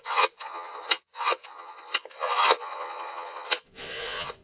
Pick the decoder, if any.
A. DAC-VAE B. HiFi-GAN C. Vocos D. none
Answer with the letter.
C